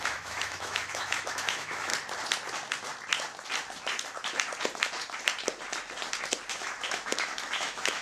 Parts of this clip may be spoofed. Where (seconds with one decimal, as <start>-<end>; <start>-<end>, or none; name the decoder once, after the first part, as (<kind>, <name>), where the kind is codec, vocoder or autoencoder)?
0.0-1.9 (autoencoder, DAC-VAE); 6.5-8.0